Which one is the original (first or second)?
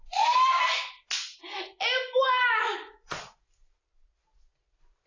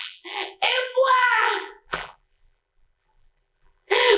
first